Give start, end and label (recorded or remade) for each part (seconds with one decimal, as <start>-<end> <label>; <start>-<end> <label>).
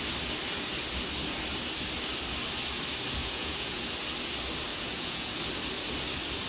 0.0-3.2 recorded; 3.2-3.8 remade; 3.8-4.7 recorded; 4.7-5.3 remade; 5.3-6.5 recorded